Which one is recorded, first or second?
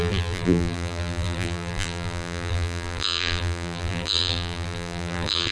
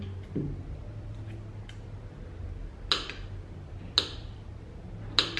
second